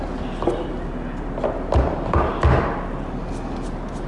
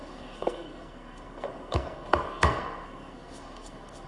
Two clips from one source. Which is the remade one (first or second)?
second